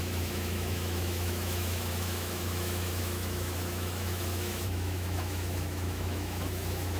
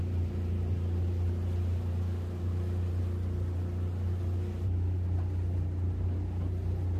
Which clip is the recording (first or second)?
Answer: second